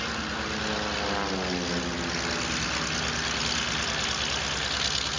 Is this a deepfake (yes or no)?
no